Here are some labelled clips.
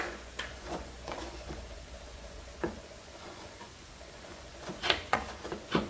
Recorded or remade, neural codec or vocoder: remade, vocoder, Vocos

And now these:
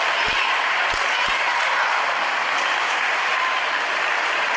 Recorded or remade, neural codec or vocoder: recorded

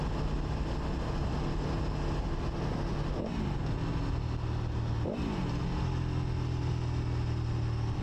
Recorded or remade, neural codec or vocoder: recorded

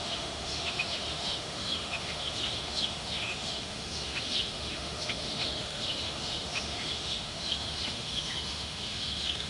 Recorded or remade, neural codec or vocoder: remade, autoencoder, DAC-VAE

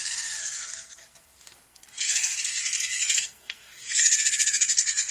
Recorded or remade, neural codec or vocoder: remade, codec, SNAC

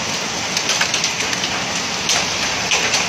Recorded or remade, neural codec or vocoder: recorded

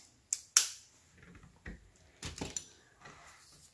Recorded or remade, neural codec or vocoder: recorded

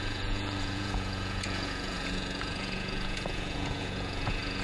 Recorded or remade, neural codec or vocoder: remade, vocoder, Vocos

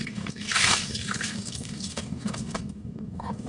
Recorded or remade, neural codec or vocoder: remade, codec, DAC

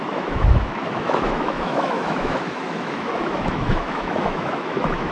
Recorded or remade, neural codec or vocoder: remade, autoencoder, DAC-VAE